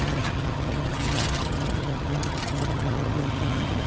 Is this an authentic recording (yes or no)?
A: no